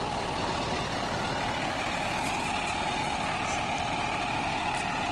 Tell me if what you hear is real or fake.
real